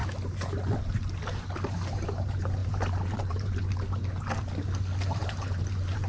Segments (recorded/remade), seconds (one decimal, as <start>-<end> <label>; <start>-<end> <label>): 0.0-2.6 recorded; 2.6-3.7 remade; 3.7-5.2 recorded; 5.2-6.1 remade